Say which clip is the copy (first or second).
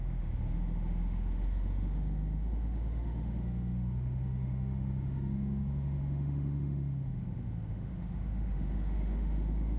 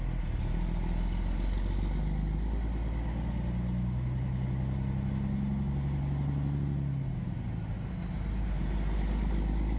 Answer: first